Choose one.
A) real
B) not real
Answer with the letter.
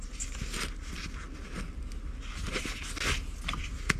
A